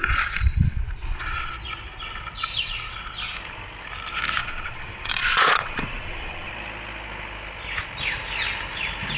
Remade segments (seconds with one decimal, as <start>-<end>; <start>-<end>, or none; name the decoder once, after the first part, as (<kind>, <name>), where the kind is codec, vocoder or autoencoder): 0.0-1.5 (vocoder, Vocos); 4.4-6.5